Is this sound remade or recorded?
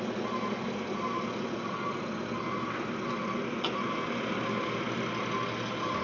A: recorded